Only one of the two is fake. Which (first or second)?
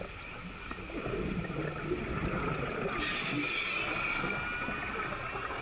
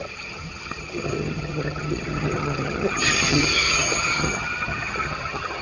second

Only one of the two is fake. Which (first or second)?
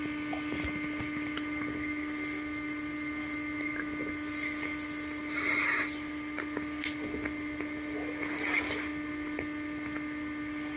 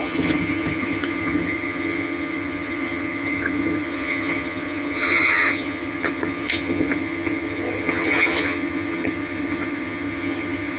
second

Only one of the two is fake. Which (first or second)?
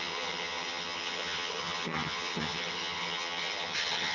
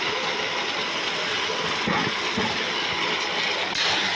first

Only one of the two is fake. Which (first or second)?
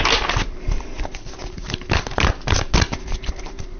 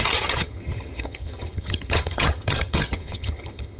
second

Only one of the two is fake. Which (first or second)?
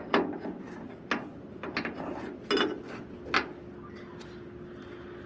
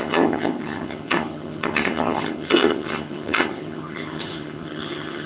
second